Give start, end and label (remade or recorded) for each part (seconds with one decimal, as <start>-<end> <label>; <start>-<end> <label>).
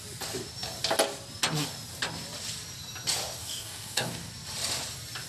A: 0.0-3.4 recorded; 3.4-4.3 remade; 4.3-5.3 recorded